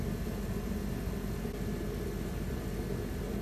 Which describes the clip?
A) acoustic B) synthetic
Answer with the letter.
A